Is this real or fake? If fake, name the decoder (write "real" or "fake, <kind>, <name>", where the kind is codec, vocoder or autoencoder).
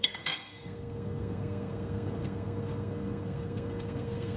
fake, codec, SNAC